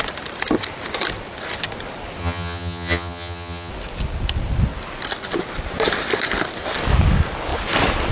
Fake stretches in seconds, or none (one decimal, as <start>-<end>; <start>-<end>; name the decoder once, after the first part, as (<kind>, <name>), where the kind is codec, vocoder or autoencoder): 2.2-3.7 (vocoder, HiFi-GAN)